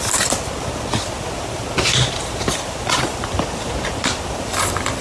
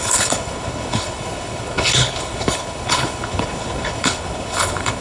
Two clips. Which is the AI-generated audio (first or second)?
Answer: second